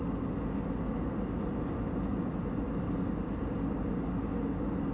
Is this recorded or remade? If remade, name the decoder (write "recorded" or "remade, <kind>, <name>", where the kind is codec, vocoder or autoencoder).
recorded